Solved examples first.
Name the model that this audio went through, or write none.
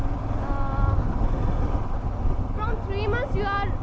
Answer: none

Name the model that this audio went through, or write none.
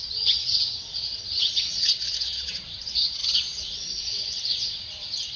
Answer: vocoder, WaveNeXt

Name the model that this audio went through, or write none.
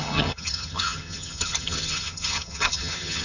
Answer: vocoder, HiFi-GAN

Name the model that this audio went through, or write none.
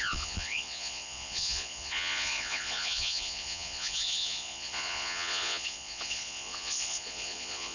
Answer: vocoder, Vocos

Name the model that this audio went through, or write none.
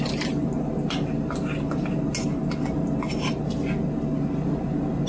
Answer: none